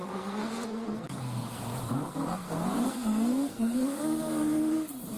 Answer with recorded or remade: remade